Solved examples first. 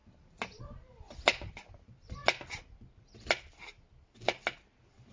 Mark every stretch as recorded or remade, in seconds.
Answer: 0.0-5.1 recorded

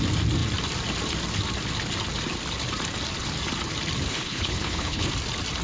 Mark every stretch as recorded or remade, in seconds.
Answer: 0.0-4.1 recorded; 4.1-5.1 remade; 5.1-5.6 recorded

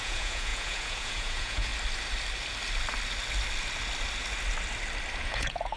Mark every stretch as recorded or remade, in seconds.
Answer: 0.0-1.7 remade; 1.7-5.2 recorded; 5.2-5.8 remade

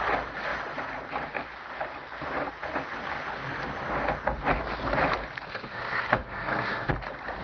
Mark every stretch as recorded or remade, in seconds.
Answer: 0.0-5.5 recorded; 5.5-6.9 remade; 6.9-7.4 recorded

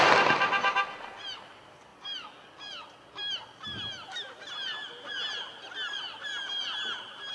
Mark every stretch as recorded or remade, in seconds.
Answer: 0.0-7.3 recorded

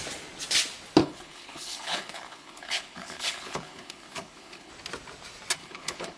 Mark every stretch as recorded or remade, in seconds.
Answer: 0.0-1.0 recorded; 1.0-4.7 remade; 4.7-5.6 recorded; 5.6-6.2 remade

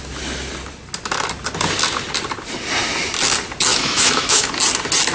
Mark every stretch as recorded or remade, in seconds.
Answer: 0.0-3.7 recorded; 3.7-4.5 remade; 4.5-5.1 recorded